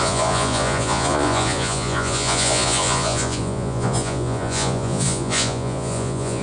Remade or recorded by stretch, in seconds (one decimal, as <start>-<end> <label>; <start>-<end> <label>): 0.0-6.4 remade